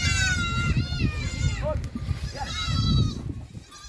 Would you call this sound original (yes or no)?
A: yes